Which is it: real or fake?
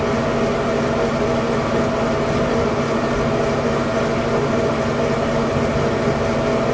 real